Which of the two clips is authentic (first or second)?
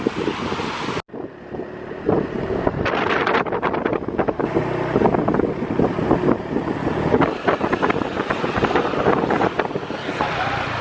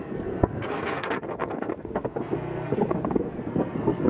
first